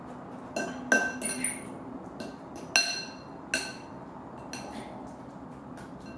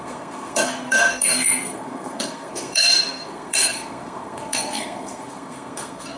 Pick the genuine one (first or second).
first